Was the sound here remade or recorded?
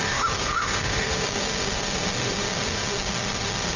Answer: remade